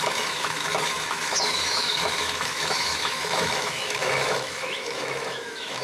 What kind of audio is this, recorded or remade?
remade